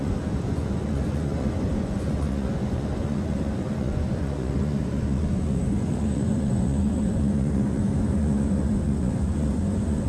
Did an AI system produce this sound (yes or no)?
yes